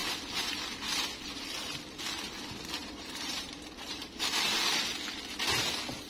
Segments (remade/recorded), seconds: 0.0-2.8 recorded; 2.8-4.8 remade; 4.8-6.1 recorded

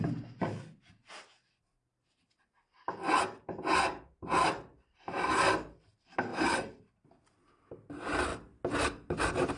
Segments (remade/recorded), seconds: 0.0-4.7 recorded; 4.7-5.5 remade; 5.5-6.3 recorded; 6.3-7.7 remade; 7.7-9.6 recorded

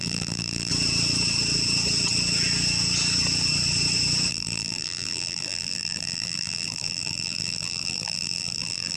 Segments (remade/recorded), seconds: 0.0-0.7 remade; 0.7-4.3 recorded; 4.3-9.0 remade

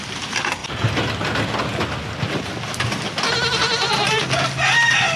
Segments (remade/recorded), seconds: 0.0-5.2 recorded